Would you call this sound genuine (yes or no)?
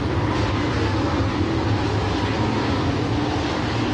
yes